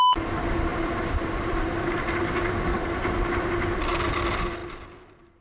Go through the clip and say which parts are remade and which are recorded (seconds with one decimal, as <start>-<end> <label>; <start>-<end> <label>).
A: 0.0-0.7 recorded; 0.7-3.9 remade; 3.9-5.4 recorded